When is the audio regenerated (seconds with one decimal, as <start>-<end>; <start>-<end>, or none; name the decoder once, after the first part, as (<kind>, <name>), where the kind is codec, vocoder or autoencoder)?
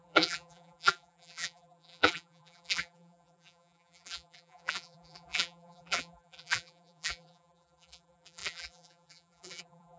0.0-10.0 (vocoder, BigVGAN v2)